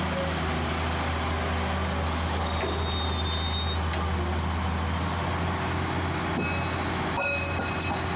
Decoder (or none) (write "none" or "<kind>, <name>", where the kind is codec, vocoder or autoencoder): none